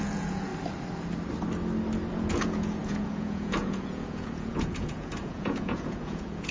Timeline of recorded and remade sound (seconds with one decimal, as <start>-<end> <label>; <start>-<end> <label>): 0.0-0.5 remade; 0.5-2.1 recorded; 2.1-6.5 remade